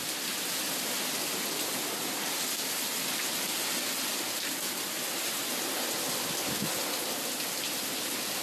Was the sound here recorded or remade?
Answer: recorded